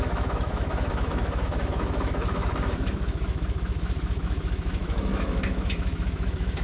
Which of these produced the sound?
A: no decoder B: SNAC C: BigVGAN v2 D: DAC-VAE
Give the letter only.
D